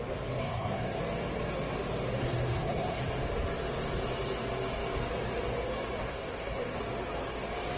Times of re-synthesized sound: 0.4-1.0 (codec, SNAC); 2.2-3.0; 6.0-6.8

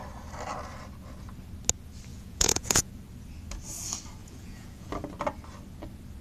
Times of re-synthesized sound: 2.1-2.9 (vocoder, Vocos); 4.2-4.9

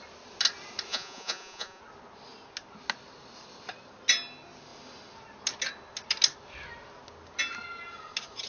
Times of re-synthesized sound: 0.9-1.8 (vocoder, Vocos)

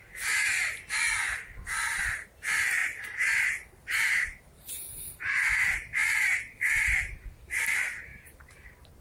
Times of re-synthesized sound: 2.8-5.3 (vocoder, BigVGAN v2); 6.0-6.7; 8.1-9.0

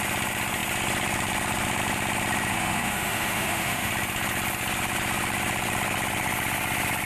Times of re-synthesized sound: 2.5-3.9 (autoencoder, DAC-VAE)

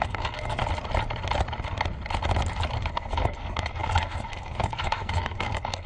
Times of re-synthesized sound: 0.0-0.6 (codec, SNAC); 2.9-5.9

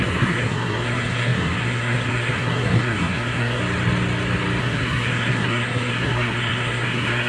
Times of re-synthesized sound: 0.0-3.6 (codec, SNAC); 4.6-7.3